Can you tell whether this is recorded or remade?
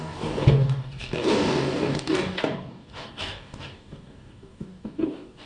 remade